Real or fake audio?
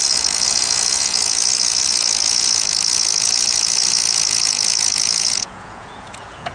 fake